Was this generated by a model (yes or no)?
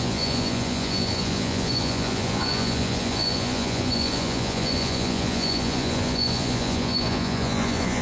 yes